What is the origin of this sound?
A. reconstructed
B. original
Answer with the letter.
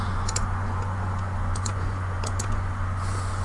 A